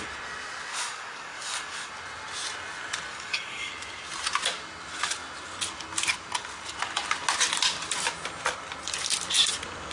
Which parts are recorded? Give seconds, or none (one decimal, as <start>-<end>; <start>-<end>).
0.0-0.7; 1.9-3.1; 3.7-9.9